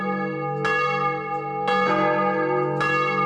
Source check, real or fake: real